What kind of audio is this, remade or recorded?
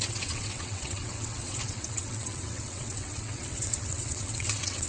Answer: remade